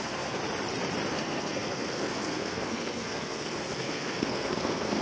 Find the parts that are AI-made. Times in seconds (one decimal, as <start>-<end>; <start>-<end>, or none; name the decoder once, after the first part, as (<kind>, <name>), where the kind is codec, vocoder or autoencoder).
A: 0.0-0.4 (codec, SNAC); 1.1-5.0